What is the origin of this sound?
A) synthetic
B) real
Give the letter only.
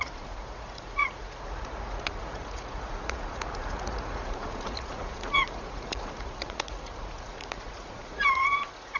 A